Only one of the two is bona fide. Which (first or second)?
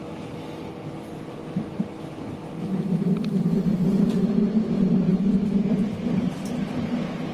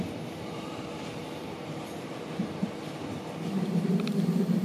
first